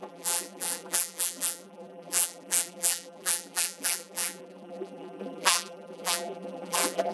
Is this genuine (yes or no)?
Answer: no